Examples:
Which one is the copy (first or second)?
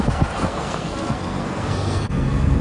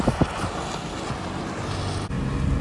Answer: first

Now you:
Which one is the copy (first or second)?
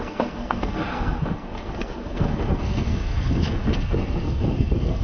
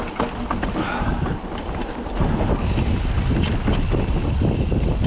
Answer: first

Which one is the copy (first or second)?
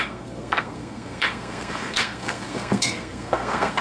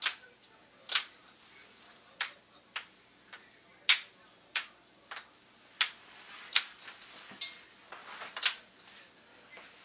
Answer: first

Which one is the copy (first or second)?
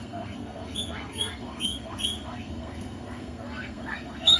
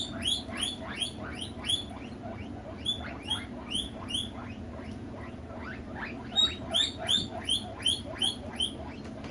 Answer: first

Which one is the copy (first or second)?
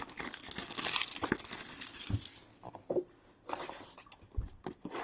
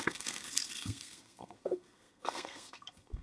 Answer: second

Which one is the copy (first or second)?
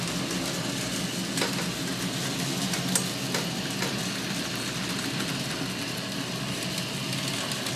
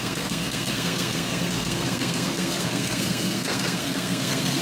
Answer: second